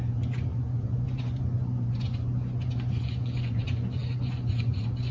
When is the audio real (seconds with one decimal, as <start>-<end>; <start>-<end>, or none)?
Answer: none